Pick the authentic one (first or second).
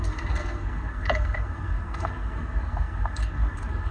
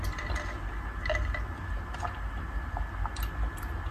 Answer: second